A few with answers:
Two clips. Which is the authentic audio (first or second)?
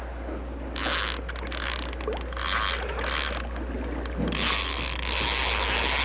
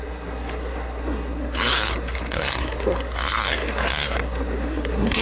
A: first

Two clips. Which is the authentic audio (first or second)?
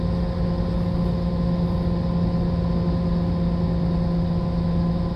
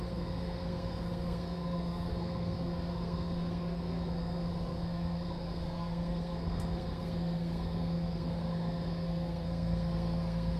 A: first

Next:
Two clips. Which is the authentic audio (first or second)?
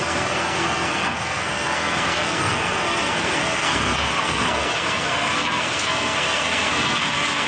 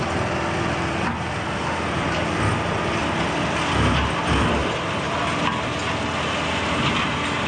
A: second